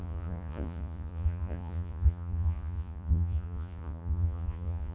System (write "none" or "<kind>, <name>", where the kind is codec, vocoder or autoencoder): vocoder, Vocos